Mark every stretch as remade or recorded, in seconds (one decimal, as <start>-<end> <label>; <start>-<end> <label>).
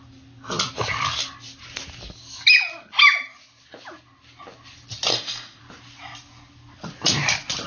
0.0-5.1 recorded; 5.1-5.6 remade; 5.6-7.7 recorded